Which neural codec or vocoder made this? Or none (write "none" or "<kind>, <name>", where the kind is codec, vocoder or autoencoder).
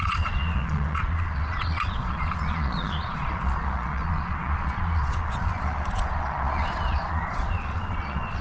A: vocoder, Vocos